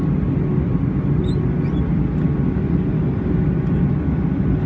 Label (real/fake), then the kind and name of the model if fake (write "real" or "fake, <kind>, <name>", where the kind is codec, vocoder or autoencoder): real